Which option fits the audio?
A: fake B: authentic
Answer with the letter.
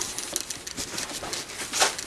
B